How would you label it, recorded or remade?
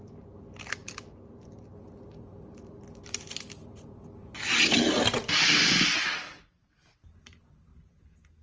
recorded